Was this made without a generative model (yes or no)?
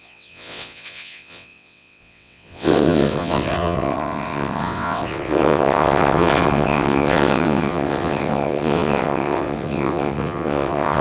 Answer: no